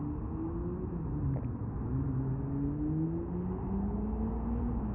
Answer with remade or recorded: recorded